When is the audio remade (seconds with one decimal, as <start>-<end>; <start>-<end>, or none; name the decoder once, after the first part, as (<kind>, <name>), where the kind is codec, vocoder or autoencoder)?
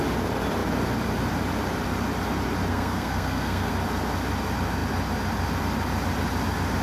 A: 2.7-3.7 (codec, SNAC)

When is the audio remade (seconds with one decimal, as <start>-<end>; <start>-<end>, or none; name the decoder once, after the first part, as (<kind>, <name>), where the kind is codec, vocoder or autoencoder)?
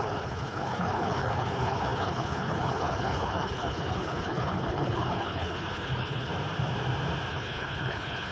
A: 0.0-6.3 (codec, HILCodec); 7.3-8.3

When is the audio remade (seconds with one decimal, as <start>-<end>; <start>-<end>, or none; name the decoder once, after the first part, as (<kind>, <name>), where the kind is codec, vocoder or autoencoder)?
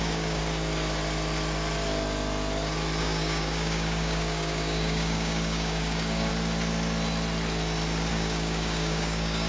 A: 0.0-0.4 (codec, DAC); 3.0-6.3; 8.1-9.5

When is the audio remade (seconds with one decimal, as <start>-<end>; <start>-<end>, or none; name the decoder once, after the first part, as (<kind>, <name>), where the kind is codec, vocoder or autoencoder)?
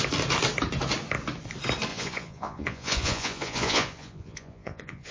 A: 1.9-5.1 (vocoder, Vocos)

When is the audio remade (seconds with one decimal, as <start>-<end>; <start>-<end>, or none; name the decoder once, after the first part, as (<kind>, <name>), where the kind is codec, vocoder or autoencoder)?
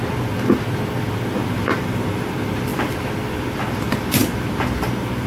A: 1.4-2.3 (vocoder, BigVGAN v2)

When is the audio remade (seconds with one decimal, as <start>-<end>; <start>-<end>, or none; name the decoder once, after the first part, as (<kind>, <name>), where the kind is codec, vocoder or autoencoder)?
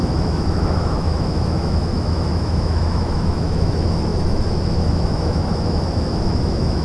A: 0.0-6.8 (autoencoder, DAC-VAE)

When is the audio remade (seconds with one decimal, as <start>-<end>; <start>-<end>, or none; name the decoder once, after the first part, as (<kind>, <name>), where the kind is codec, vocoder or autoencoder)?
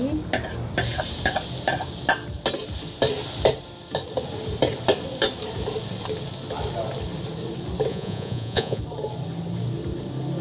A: 7.9-8.8 (vocoder, Vocos)